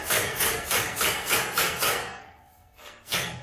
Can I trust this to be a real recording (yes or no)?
no